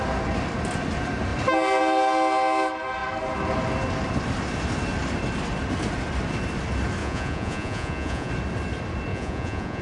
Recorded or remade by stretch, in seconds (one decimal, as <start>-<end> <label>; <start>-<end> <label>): 0.0-7.0 recorded; 7.0-8.3 remade; 8.3-9.1 recorded; 9.1-9.8 remade